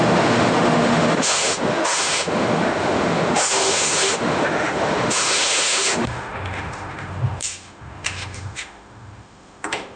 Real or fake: fake